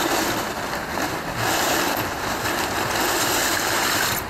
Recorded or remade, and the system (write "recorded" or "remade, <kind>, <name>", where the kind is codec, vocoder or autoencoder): recorded